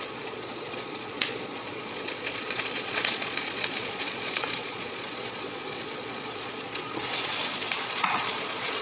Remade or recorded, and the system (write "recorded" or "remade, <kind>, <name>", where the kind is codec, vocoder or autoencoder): remade, vocoder, Vocos